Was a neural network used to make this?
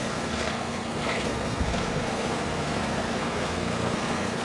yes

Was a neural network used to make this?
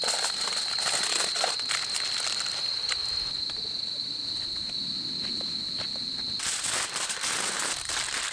no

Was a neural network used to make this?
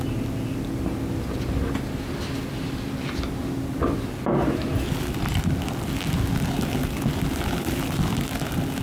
no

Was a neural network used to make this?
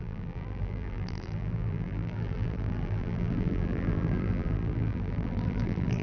yes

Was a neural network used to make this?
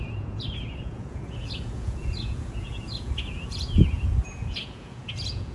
yes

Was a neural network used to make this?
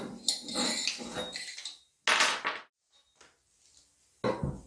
no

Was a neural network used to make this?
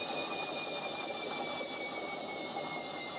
no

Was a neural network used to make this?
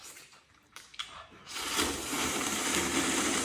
yes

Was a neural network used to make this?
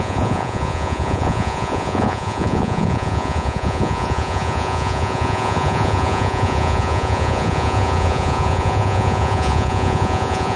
yes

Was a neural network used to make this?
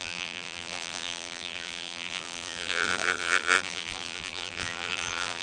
yes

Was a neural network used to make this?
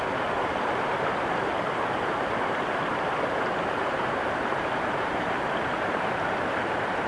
yes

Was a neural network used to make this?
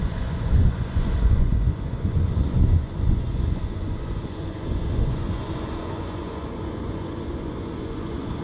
yes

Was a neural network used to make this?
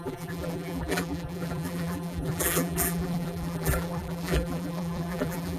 yes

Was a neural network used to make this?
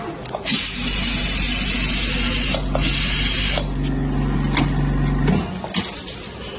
no